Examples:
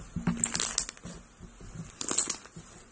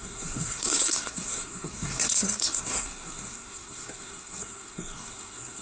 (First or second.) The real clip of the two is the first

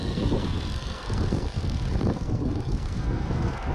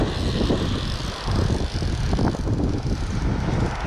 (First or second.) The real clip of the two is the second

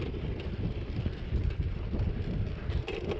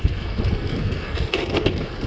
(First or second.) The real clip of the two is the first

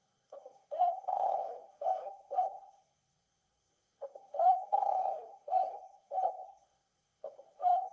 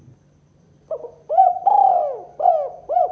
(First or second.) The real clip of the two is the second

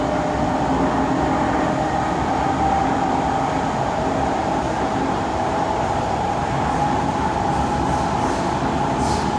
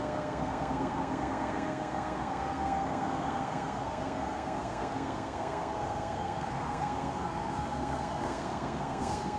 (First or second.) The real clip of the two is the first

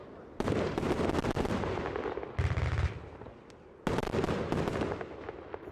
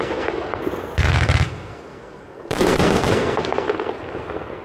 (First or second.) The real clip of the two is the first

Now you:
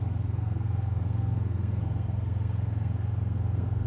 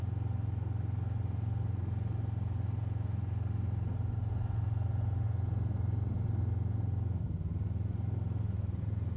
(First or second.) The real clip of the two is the second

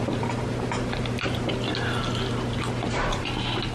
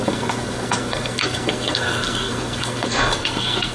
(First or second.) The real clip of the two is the first